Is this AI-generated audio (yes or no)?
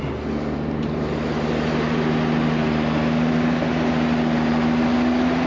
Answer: no